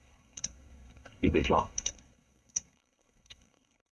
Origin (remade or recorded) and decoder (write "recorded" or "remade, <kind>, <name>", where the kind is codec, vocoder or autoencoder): remade, codec, SNAC